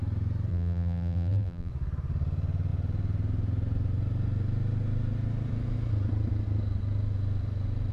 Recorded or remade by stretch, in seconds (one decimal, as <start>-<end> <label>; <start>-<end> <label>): 0.0-0.5 recorded; 0.5-1.7 remade; 1.7-7.9 recorded